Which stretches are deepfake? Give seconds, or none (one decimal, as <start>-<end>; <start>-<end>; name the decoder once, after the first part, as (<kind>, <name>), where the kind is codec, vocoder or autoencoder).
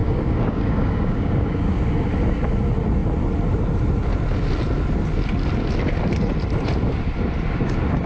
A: 0.0-1.8 (codec, DAC)